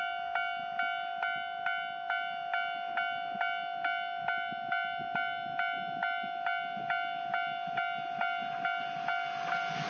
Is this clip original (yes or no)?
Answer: yes